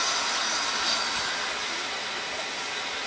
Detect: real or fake real